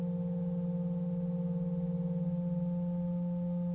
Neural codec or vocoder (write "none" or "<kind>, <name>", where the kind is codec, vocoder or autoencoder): none